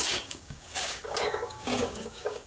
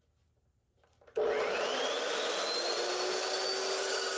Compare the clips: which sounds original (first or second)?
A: second